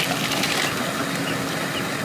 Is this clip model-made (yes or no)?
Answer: no